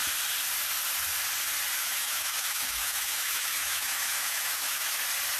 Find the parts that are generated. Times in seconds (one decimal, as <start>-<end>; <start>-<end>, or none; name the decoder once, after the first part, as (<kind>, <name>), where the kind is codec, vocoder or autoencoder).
1.8-5.0 (autoencoder, DAC-VAE)